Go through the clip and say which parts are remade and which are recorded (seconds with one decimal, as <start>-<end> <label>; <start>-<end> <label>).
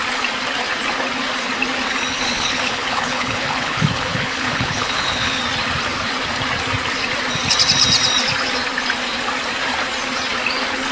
0.0-2.1 recorded; 2.1-5.4 remade; 5.4-10.9 recorded